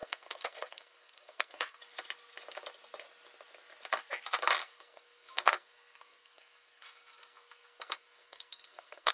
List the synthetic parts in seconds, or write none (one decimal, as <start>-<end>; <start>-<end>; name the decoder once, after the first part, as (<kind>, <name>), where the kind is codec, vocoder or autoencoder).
0.0-1.8 (codec, SNAC); 4.6-9.1